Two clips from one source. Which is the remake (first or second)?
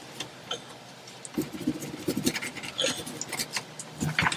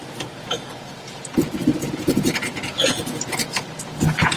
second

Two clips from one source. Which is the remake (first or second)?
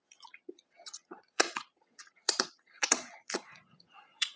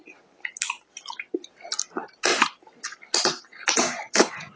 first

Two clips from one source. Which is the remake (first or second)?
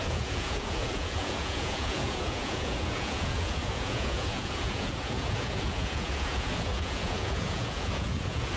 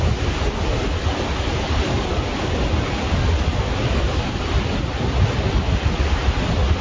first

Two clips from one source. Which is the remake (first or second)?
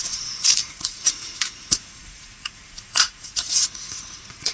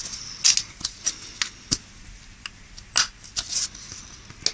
first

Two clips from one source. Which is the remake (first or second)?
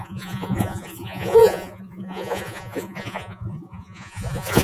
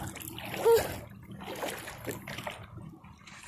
first